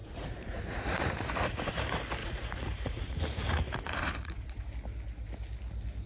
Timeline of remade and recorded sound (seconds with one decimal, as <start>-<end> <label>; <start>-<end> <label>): 0.0-1.8 remade; 1.8-2.2 recorded; 2.2-4.7 remade; 4.7-6.1 recorded